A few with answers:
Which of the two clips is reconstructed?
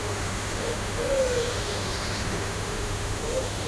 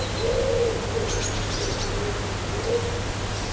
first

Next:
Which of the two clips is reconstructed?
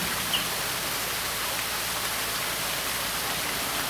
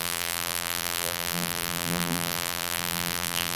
second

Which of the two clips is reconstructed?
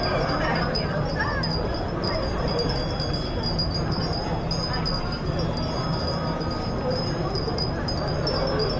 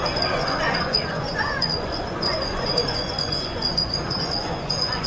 second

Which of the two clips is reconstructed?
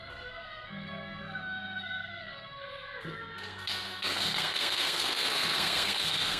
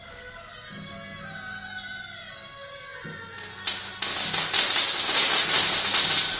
first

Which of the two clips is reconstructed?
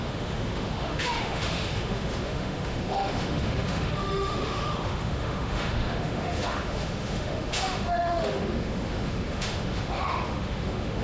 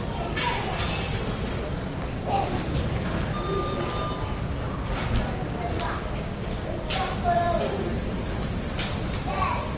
first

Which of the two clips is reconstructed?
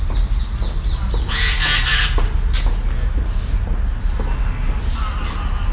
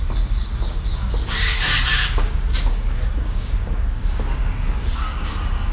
second